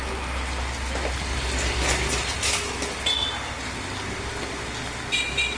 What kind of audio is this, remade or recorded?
recorded